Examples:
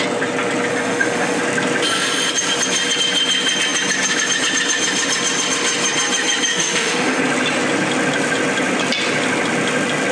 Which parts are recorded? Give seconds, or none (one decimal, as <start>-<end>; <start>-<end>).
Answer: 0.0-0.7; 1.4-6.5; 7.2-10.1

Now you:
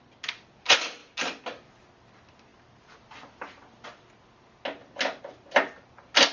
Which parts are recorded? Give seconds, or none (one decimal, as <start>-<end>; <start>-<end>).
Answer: 0.0-6.3

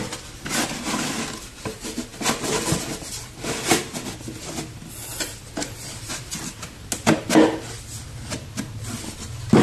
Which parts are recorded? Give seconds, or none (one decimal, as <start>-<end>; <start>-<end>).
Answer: 0.0-9.6